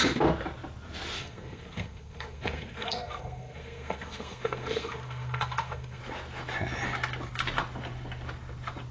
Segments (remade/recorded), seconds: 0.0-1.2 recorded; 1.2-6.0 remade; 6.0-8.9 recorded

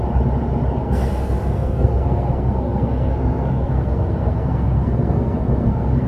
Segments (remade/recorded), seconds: 0.0-0.8 recorded; 0.8-6.1 remade

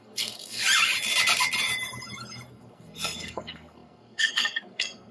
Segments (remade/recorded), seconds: 0.0-0.6 remade; 0.6-2.5 recorded; 2.5-5.1 remade